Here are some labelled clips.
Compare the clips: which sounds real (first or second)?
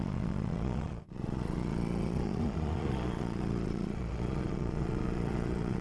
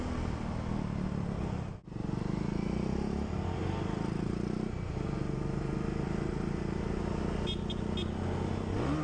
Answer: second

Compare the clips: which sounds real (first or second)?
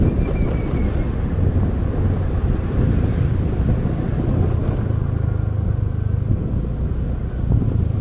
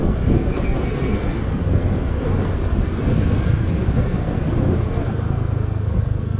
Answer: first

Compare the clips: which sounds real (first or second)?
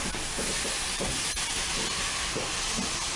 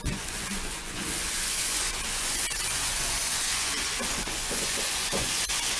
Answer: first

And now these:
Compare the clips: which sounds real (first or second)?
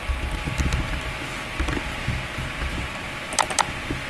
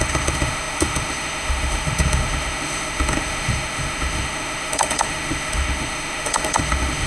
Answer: first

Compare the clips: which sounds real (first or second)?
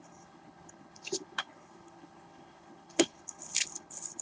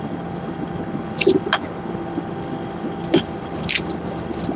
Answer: second